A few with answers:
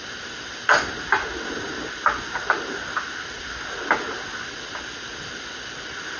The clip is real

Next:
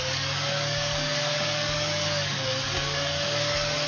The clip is fake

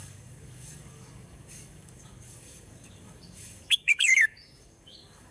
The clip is fake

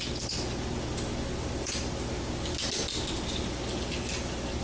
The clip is real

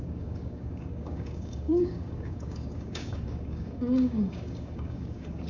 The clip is fake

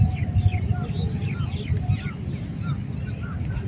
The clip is real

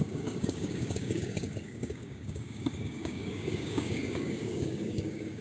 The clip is fake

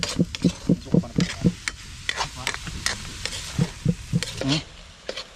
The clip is real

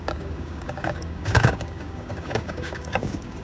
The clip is fake